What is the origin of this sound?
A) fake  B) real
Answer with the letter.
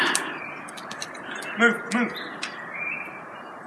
B